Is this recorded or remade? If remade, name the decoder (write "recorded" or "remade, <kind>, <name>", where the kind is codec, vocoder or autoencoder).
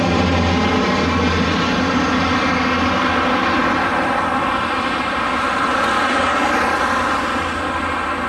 recorded